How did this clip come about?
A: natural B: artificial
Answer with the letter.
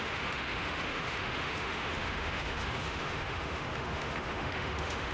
B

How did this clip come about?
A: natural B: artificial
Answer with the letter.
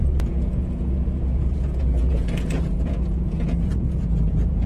B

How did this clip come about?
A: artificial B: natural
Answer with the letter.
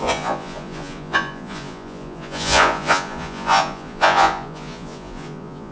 A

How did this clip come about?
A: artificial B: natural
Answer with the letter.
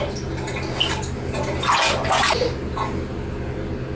B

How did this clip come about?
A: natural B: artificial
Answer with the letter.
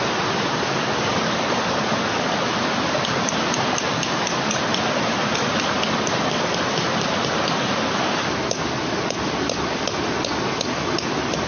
A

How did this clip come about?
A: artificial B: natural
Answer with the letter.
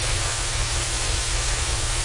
A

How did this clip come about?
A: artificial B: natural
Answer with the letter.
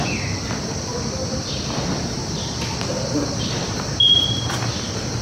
B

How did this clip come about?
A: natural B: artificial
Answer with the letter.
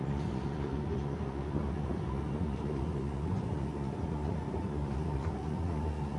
B